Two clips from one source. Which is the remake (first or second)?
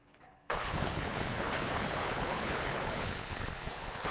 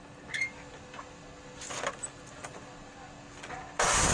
first